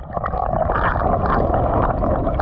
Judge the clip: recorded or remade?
recorded